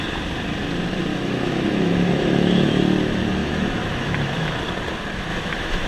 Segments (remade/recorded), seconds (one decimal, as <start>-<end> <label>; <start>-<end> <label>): 0.0-1.1 recorded; 1.1-2.8 remade; 2.8-3.4 recorded; 3.4-4.6 remade; 4.6-5.3 recorded; 5.3-5.9 remade